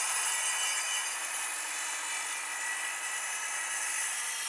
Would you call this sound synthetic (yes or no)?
no